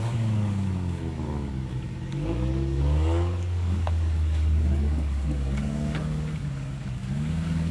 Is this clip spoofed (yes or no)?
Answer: yes